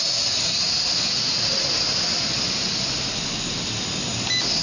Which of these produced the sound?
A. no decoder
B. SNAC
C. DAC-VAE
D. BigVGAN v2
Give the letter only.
A